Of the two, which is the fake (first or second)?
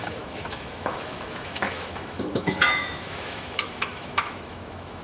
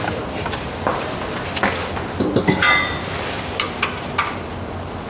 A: first